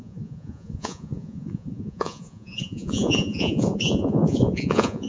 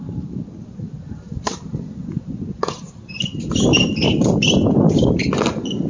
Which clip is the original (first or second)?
second